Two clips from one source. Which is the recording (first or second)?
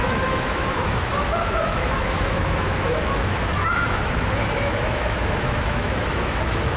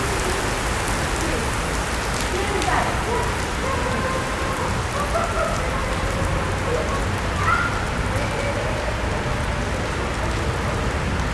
second